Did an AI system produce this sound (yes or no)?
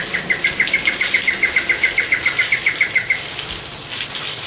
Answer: no